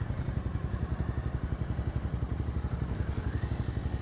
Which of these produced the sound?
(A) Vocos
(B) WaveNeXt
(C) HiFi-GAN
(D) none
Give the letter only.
D